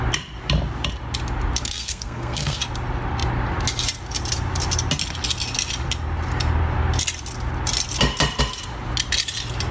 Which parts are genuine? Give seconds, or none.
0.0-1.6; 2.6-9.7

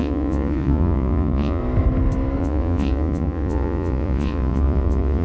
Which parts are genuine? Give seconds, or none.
1.6-2.4

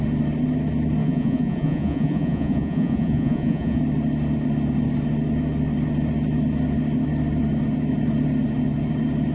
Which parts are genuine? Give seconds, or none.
0.0-1.0; 3.8-9.3

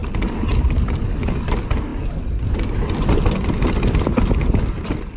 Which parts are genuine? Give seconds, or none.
0.0-5.2

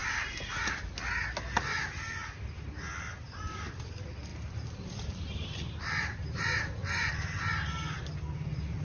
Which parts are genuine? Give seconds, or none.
0.5-4.3; 7.1-8.8